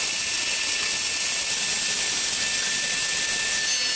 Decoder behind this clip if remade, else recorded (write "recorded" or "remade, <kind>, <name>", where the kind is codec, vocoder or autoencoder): recorded